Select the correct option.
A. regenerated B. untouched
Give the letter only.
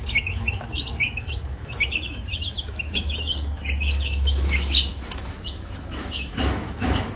A